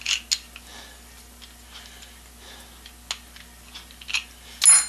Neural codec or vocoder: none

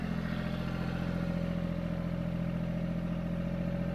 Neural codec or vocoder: none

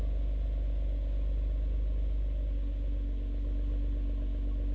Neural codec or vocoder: none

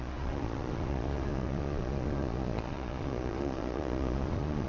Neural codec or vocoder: vocoder, Vocos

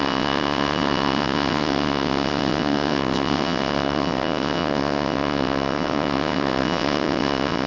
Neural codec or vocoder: vocoder, WaveNeXt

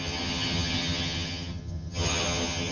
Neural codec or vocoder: vocoder, HiFi-GAN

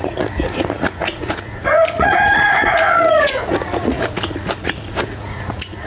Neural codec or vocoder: vocoder, Vocos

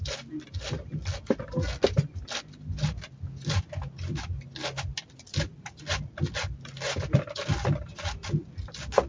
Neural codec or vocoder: none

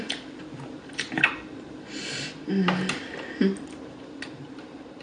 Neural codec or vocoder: none